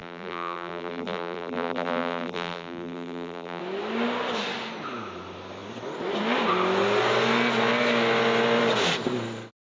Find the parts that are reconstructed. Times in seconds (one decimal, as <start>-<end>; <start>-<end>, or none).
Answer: 0.0-3.6